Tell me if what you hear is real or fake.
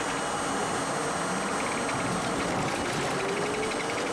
real